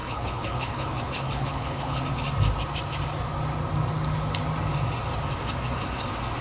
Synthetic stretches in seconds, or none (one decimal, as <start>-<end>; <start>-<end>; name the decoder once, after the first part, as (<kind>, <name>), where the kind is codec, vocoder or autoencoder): 0.0-2.0 (codec, HILCodec)